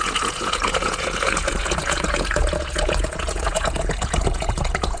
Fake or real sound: fake